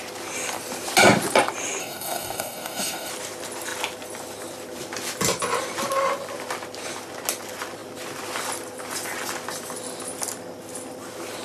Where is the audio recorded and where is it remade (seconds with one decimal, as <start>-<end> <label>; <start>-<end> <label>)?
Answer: 0.0-1.8 recorded; 1.8-3.1 remade; 3.1-11.4 recorded